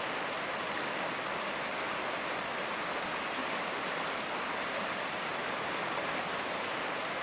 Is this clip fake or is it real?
real